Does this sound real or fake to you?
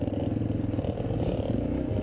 real